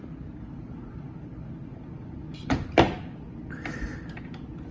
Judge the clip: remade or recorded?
recorded